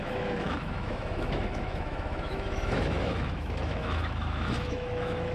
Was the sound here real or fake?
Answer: fake